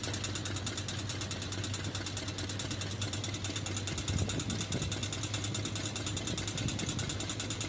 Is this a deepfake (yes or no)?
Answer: no